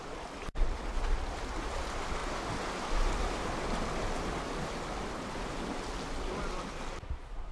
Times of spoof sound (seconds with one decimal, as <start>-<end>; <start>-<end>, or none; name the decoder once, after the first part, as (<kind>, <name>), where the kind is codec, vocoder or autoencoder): none